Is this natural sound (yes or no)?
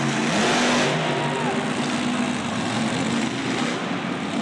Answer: yes